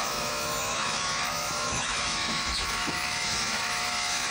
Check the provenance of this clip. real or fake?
fake